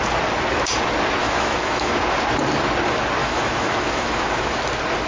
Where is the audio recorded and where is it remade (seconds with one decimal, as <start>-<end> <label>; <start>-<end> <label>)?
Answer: 0.0-1.2 recorded; 1.2-1.9 remade; 1.9-3.2 recorded; 3.2-4.6 remade; 4.6-5.1 recorded